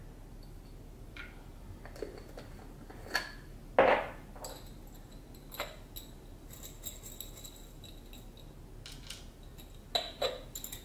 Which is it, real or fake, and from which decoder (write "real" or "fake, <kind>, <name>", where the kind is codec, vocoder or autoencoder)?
real